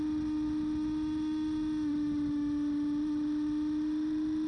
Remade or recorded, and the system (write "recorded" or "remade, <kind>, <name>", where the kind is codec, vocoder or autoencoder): recorded